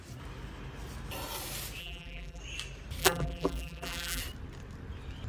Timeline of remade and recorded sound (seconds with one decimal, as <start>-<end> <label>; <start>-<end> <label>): 0.0-1.8 recorded; 1.8-2.4 remade; 2.4-3.0 recorded; 3.0-4.2 remade; 4.2-5.3 recorded